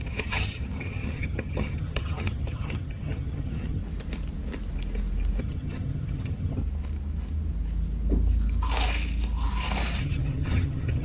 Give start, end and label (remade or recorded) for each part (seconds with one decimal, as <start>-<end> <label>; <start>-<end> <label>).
0.0-3.8 remade; 3.8-5.4 recorded; 5.4-6.6 remade; 6.6-10.0 recorded; 10.0-11.0 remade